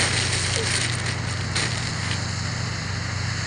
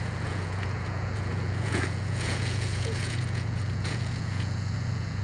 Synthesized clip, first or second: second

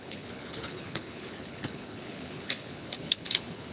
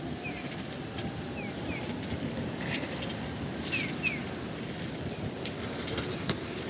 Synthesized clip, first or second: first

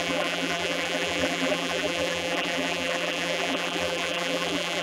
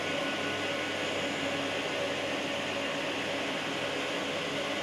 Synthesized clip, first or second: first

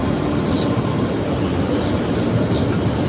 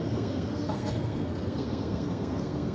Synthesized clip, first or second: second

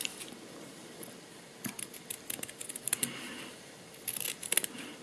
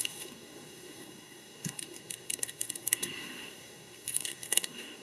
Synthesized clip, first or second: second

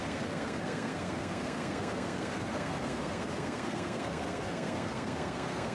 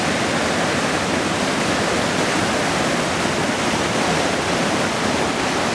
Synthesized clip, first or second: first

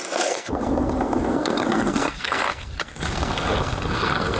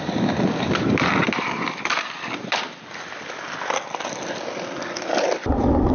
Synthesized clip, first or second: first